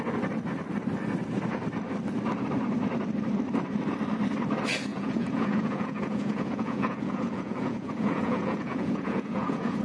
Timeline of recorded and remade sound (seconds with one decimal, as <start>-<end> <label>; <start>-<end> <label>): 0.0-4.9 recorded; 4.9-9.8 remade